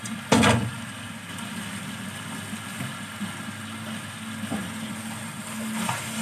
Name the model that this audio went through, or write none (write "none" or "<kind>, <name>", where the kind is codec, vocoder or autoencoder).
none